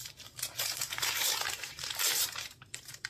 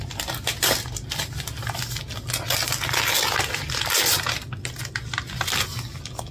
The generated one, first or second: first